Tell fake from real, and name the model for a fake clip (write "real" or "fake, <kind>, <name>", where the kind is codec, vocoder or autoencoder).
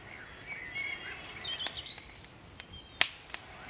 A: real